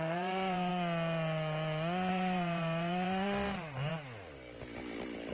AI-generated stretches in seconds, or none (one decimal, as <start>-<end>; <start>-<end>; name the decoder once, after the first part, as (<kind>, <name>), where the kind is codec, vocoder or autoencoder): 0.0-0.7 (vocoder, BigVGAN v2); 2.1-3.9